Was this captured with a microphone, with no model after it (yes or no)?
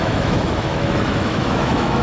no